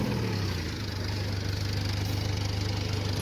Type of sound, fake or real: real